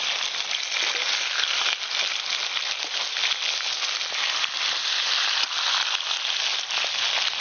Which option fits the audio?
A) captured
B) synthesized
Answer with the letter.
A